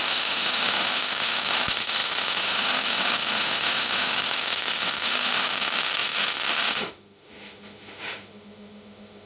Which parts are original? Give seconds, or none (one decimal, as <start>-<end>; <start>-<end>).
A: none